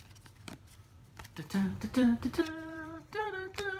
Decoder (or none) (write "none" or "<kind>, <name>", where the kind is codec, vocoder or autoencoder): vocoder, BigVGAN v2